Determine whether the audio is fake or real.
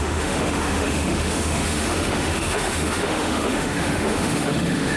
fake